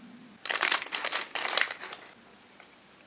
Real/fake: real